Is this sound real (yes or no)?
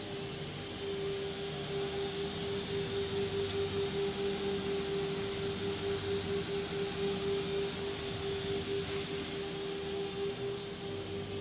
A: yes